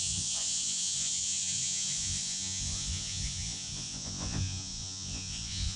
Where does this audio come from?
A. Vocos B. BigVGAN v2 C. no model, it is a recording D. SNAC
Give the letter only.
A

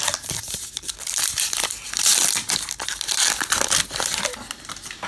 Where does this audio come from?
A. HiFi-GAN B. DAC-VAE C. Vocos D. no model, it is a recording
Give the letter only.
D